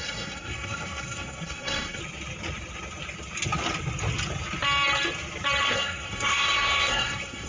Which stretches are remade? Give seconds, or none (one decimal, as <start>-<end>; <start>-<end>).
0.0-2.0; 5.6-7.5